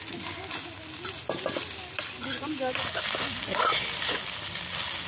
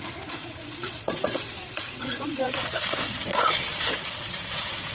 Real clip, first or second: first